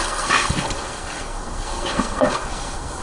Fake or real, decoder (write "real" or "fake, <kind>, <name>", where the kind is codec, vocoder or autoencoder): fake, codec, SNAC